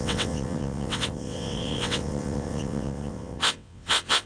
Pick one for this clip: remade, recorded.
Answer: remade